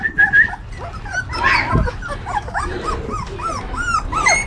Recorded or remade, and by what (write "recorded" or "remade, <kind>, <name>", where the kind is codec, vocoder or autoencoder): recorded